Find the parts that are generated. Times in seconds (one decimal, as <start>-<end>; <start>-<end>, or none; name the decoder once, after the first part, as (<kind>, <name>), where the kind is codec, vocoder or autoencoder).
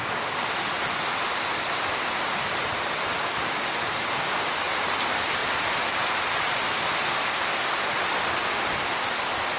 none